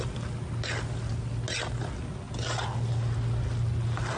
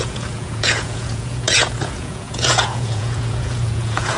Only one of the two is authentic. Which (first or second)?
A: first